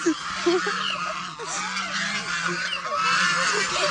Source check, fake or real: real